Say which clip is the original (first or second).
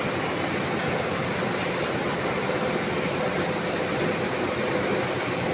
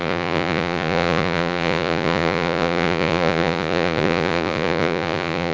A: first